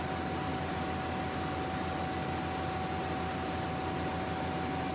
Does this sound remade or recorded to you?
recorded